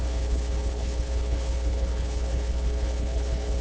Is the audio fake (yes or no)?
yes